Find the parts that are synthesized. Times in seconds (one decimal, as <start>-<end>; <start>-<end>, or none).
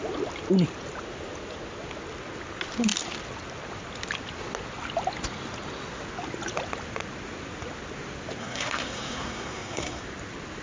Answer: 8.4-10.0